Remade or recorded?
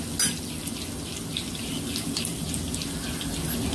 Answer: recorded